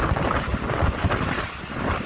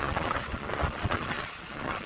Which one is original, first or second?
first